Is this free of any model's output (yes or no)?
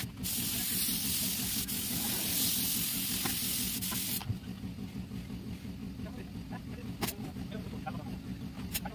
yes